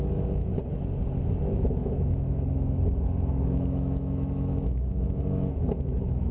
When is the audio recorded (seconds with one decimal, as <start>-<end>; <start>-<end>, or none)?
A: 0.5-1.4